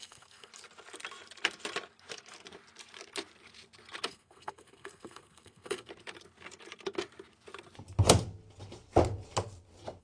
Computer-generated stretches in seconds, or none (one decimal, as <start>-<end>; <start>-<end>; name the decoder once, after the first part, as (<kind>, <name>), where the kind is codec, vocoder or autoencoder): 0.0-0.5 (codec, SNAC); 4.1-5.9